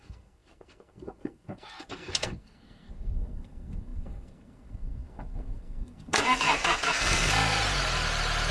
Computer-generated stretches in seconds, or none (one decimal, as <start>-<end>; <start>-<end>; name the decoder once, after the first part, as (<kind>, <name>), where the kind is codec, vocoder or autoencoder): 0.0-7.6 (codec, SNAC)